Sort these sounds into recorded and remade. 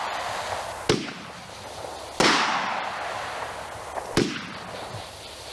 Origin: recorded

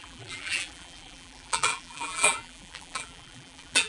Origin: remade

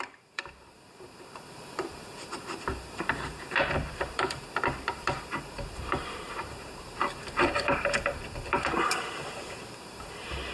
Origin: remade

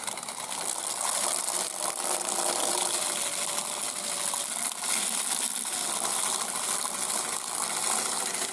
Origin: recorded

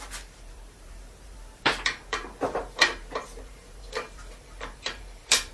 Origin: remade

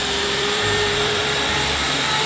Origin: remade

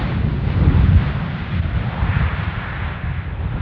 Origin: recorded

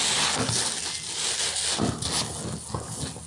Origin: recorded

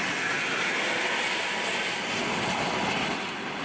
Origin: recorded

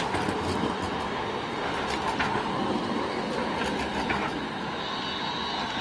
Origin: recorded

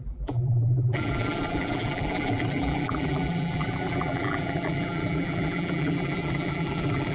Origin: remade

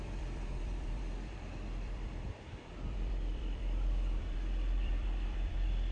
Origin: remade